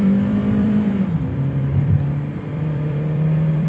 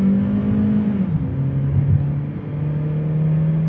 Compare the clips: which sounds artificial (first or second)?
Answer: first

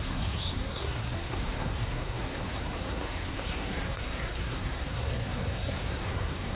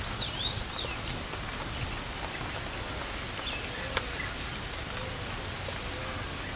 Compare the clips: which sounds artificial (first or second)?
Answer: first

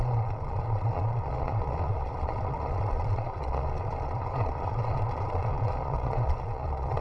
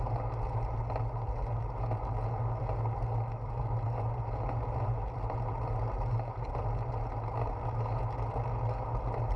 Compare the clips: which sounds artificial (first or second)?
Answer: first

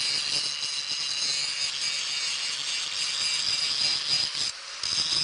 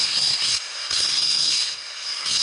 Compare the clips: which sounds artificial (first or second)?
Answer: second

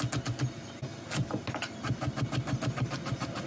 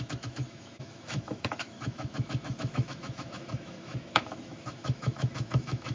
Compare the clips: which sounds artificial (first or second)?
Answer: second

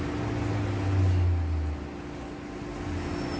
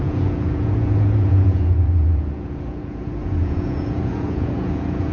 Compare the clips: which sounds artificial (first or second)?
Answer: second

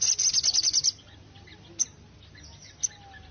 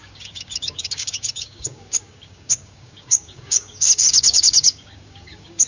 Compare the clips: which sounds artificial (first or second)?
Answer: second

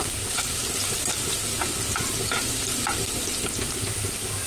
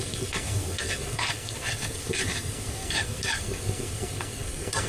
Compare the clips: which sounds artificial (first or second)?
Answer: second